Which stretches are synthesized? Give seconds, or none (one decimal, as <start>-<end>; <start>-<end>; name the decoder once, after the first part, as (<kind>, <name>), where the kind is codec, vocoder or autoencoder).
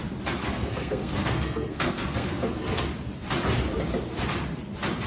0.5-2.9 (codec, SNAC)